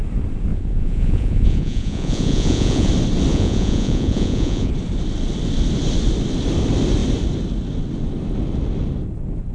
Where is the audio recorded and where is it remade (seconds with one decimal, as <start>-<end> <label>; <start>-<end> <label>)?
0.0-0.5 recorded; 0.5-2.9 remade; 2.9-3.3 recorded; 3.3-4.7 remade; 4.7-9.5 recorded